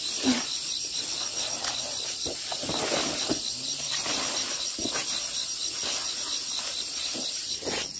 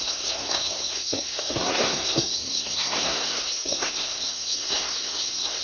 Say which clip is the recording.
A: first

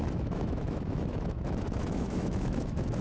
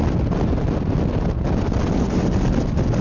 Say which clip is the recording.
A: second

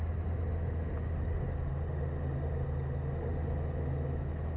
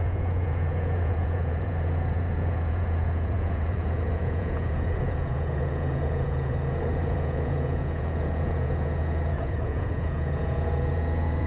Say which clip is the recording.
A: first